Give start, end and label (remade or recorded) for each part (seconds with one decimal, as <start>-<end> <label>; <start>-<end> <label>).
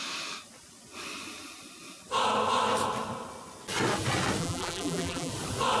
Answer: 0.0-4.4 recorded; 4.4-5.3 remade; 5.3-5.8 recorded